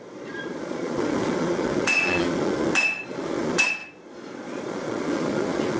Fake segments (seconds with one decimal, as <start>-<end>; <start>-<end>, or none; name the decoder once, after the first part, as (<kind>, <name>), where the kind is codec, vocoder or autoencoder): 0.0-5.8 (vocoder, Vocos)